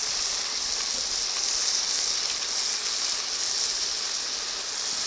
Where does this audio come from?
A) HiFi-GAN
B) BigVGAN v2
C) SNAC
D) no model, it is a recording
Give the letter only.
D